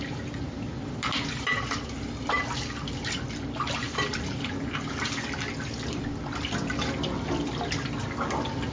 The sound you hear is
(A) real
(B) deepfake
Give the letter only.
A